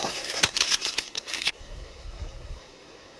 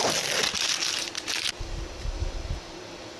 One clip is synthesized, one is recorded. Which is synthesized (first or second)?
first